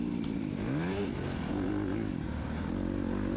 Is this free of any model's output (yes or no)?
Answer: yes